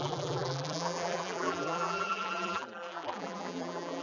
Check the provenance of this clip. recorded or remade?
remade